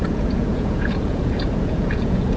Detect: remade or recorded remade